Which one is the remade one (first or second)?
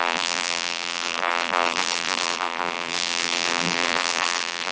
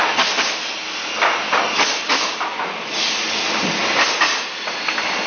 first